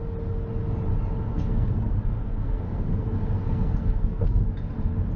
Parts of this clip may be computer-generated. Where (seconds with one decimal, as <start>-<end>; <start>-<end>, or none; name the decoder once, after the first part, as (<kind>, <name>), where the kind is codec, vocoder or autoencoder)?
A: 1.3-4.4 (codec, SNAC)